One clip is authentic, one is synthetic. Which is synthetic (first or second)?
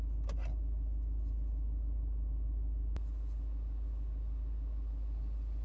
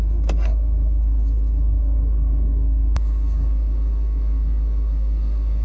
second